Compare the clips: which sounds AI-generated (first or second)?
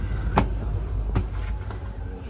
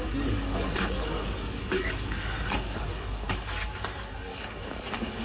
second